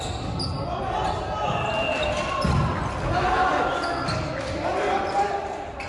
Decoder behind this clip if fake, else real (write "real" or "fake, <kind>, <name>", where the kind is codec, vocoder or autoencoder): real